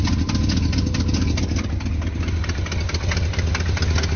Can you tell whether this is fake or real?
real